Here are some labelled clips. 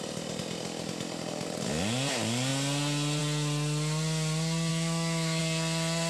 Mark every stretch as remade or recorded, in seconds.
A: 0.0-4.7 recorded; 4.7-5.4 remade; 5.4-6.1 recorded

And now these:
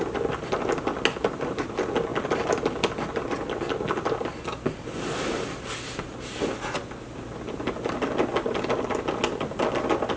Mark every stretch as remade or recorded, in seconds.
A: 0.0-10.2 recorded

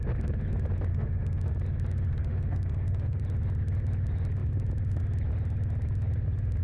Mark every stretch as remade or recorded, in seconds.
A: 0.0-0.9 recorded; 0.9-1.4 remade; 1.4-2.1 recorded; 2.1-3.2 remade; 3.2-6.6 recorded

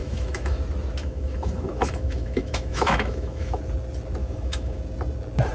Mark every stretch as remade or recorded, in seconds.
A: 0.0-0.6 remade; 0.6-1.0 recorded; 1.0-3.6 remade; 3.6-4.2 recorded; 4.2-4.8 remade; 4.8-5.5 recorded

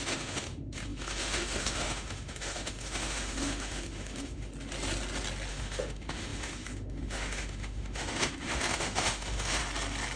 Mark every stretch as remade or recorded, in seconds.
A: 0.0-4.5 remade; 4.5-5.5 recorded; 5.5-9.6 remade; 9.6-10.2 recorded

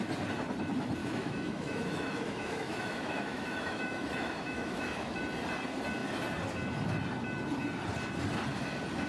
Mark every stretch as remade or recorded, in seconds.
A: 0.0-1.0 recorded; 1.0-5.2 remade; 5.2-9.1 recorded

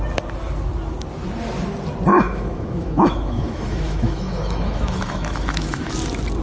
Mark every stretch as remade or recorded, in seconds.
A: 0.0-2.1 recorded; 2.1-5.9 remade; 5.9-6.4 recorded

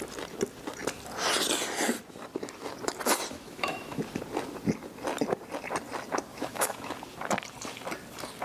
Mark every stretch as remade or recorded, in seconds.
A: 0.0-3.3 recorded; 3.3-4.0 remade; 4.0-6.3 recorded; 6.3-6.9 remade; 6.9-8.4 recorded